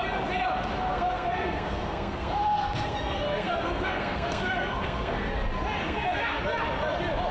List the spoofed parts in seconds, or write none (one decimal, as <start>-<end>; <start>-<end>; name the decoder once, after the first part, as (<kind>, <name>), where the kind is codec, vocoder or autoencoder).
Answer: 0.9-5.3 (codec, SNAC); 5.8-6.4